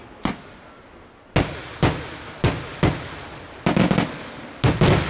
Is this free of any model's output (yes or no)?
yes